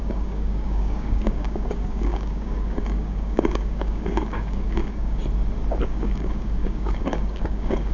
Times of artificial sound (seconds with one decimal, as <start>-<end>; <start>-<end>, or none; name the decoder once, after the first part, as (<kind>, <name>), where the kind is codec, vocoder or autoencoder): 0.0-5.2 (codec, DAC); 5.8-7.9